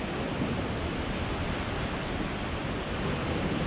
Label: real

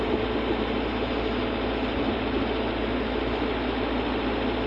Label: real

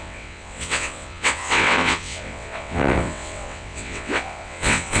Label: fake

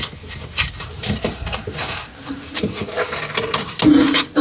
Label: real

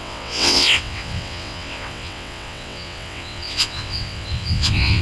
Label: fake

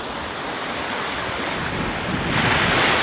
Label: real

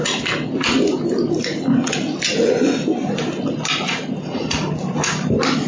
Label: real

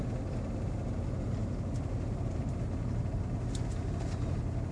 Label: real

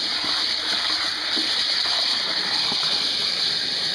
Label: real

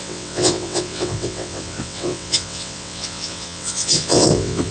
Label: fake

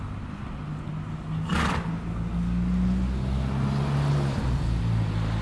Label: real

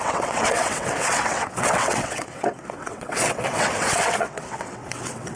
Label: fake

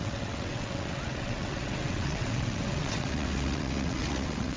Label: fake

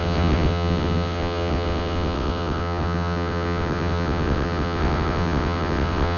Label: fake